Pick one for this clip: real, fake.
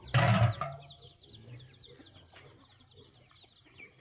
real